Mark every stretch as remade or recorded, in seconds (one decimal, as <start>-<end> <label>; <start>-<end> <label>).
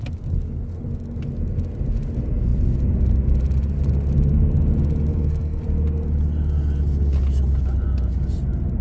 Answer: 0.0-5.1 recorded; 5.1-5.6 remade; 5.6-8.8 recorded